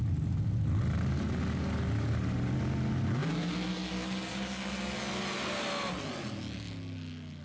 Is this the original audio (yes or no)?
yes